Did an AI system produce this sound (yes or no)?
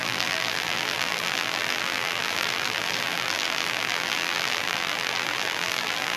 yes